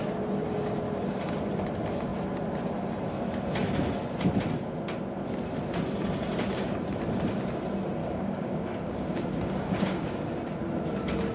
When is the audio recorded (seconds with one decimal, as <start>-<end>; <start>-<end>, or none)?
0.0-8.0; 10.2-11.3